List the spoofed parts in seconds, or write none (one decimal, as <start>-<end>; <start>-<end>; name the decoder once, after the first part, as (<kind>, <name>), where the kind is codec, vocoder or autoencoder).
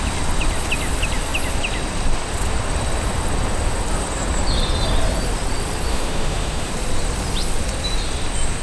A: 5.9-6.7 (autoencoder, DAC-VAE)